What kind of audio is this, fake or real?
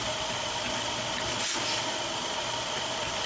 real